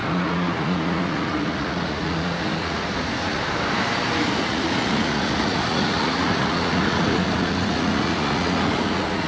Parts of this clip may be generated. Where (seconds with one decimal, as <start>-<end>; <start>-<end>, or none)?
0.0-3.4; 4.4-9.3